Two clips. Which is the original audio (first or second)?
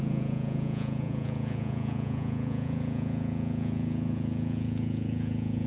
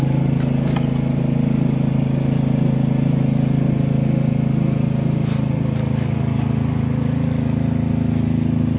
second